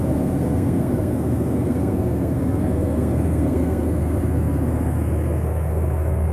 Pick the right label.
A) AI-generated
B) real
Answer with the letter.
A